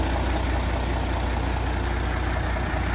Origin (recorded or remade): recorded